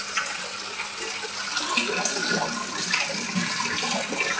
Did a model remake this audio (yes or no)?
no